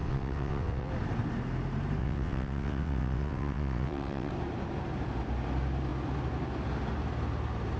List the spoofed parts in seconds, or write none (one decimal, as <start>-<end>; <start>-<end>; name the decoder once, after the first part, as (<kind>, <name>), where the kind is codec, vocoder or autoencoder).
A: 0.0-0.9 (vocoder, WaveNeXt); 2.0-4.3